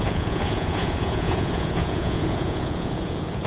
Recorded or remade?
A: remade